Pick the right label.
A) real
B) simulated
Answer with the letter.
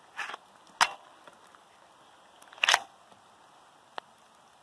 A